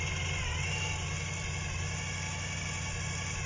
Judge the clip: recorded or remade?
recorded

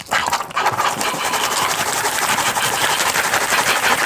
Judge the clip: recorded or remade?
recorded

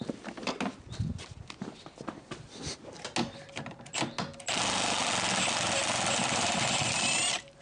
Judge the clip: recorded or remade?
recorded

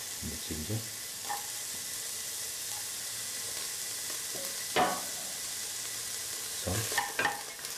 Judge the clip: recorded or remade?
recorded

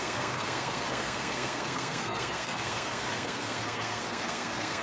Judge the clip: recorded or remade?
remade